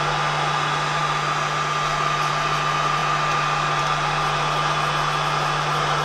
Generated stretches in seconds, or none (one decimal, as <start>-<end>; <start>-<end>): none